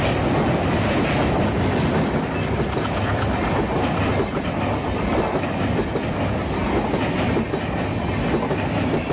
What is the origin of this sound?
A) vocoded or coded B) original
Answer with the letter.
B